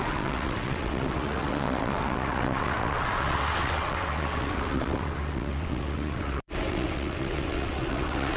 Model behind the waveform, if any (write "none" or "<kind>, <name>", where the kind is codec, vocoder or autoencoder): vocoder, WaveNeXt